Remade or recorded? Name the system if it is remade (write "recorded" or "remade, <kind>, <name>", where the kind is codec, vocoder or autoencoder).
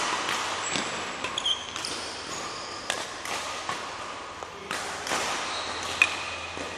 recorded